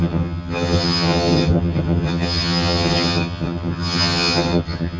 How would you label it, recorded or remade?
remade